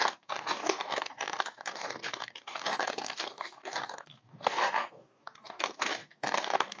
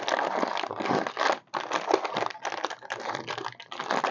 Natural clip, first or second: second